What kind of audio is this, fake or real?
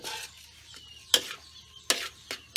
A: real